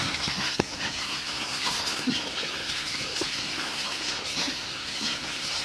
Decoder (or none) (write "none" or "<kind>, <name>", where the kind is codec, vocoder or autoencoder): codec, SNAC